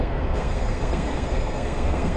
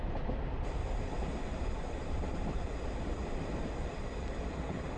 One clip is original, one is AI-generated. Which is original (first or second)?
second